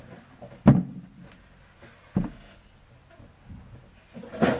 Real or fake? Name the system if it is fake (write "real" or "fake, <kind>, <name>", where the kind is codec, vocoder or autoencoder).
real